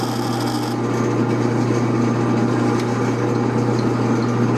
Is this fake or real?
real